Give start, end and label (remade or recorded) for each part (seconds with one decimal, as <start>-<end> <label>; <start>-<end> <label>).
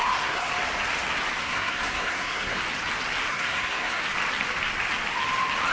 0.0-0.5 remade; 0.5-1.4 recorded; 1.4-2.6 remade; 2.6-3.3 recorded; 3.3-4.0 remade; 4.0-5.7 recorded